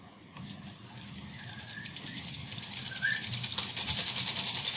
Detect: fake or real real